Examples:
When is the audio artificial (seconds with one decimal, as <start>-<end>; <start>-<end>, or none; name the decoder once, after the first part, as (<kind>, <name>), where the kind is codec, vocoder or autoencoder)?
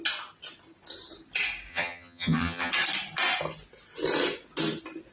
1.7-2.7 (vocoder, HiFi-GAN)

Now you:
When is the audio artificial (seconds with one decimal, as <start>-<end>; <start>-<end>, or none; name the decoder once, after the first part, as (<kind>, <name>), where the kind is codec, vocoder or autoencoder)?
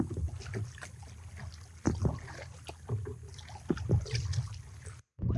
none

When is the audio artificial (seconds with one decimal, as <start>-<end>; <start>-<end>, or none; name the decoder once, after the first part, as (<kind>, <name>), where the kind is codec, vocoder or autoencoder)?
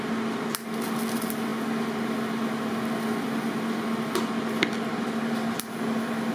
none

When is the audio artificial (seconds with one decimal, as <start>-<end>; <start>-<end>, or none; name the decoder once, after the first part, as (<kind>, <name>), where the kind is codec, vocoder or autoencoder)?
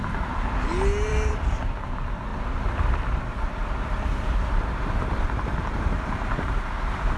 1.1-1.7 (vocoder, BigVGAN v2); 2.3-6.6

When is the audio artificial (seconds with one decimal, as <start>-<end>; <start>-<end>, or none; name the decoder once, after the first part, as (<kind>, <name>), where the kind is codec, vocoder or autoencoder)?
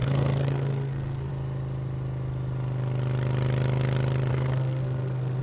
0.0-1.3 (codec, SNAC); 4.3-5.4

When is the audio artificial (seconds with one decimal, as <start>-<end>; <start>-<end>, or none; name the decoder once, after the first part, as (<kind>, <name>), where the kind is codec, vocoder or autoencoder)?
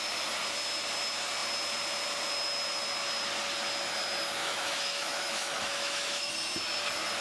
4.4-6.3 (autoencoder, DAC-VAE)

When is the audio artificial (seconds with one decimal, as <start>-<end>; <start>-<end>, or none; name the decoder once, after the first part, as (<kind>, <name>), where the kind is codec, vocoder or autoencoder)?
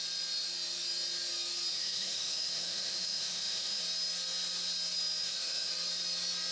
1.7-3.8 (autoencoder, DAC-VAE); 5.2-5.7